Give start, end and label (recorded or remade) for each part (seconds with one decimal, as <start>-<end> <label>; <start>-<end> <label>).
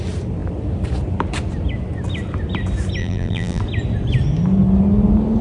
0.0-3.0 recorded; 3.0-3.6 remade; 3.6-5.4 recorded